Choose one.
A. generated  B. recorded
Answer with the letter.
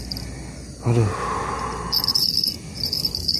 B